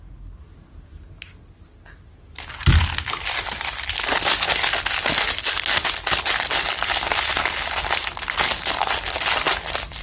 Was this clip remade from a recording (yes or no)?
no